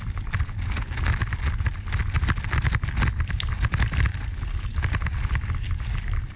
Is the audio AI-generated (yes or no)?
no